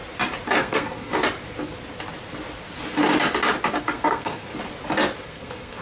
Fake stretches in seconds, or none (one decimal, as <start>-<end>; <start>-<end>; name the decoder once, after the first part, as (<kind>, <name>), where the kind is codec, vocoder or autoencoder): 0.6-1.2 (codec, SNAC); 3.8-4.5; 5.2-5.8